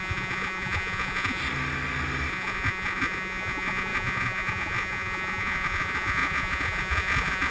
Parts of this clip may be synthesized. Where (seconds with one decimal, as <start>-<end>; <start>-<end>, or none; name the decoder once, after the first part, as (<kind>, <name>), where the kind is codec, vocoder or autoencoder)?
0.0-1.4 (vocoder, Vocos); 2.3-7.5

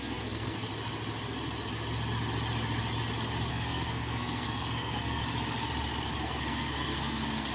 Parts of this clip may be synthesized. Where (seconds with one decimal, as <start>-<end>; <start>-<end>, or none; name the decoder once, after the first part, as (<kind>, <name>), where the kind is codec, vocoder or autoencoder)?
0.0-0.7 (codec, SNAC); 3.5-5.2; 6.2-7.5